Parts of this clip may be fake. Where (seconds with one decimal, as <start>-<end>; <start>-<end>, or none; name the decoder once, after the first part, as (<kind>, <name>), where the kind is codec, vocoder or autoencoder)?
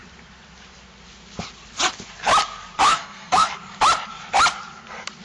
2.9-3.5 (codec, SNAC)